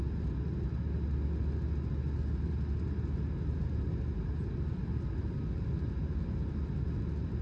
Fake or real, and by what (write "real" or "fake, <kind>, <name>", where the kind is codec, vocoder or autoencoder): real